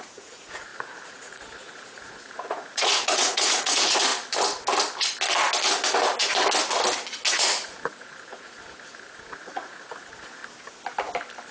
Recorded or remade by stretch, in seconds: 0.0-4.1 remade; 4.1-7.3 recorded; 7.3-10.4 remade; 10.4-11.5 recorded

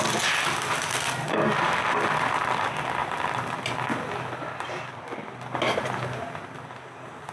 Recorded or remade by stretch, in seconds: 0.0-7.3 recorded